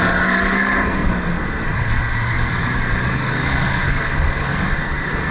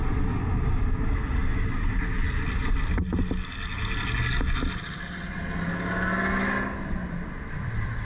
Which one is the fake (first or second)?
first